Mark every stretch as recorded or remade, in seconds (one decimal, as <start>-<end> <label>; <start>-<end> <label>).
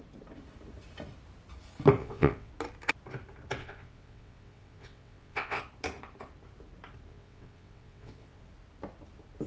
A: 0.0-2.0 recorded; 2.0-2.5 remade; 2.5-3.6 recorded; 3.6-5.6 remade; 5.6-7.1 recorded; 7.1-8.4 remade; 8.4-9.5 recorded